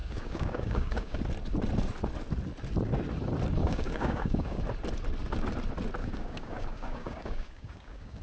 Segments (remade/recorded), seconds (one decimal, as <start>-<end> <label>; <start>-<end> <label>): 0.0-1.2 remade; 1.2-3.6 recorded; 3.6-4.6 remade; 4.6-6.0 recorded; 6.0-8.2 remade